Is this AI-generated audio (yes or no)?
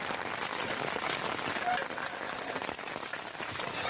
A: no